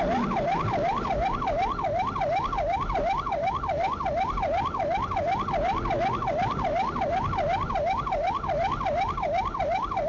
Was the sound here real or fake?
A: fake